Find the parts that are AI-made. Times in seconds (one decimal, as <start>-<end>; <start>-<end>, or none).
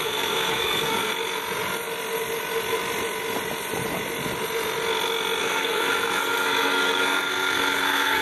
0.0-1.1; 5.4-8.2